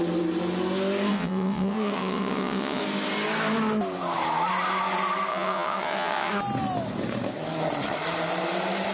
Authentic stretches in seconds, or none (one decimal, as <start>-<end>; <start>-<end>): 0.0-1.1; 2.8-5.3; 6.3-8.9